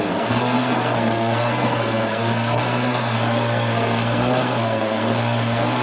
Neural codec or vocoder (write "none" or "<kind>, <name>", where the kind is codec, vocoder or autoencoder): codec, SNAC